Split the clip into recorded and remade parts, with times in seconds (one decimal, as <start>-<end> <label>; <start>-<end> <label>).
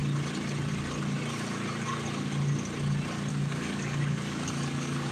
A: 0.0-3.3 recorded; 3.3-5.1 remade